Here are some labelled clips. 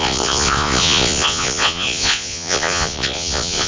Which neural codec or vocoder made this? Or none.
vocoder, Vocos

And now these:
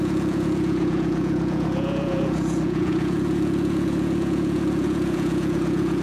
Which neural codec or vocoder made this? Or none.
vocoder, Vocos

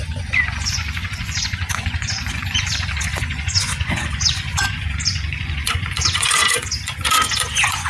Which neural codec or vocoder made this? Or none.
vocoder, Vocos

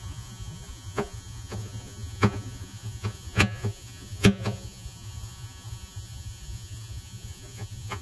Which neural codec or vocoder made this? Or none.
vocoder, Vocos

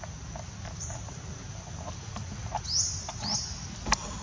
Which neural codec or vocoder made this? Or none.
none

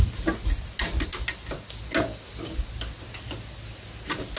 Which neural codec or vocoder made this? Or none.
none